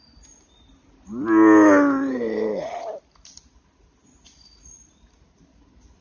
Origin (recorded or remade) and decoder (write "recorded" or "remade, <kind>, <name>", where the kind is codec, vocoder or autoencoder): recorded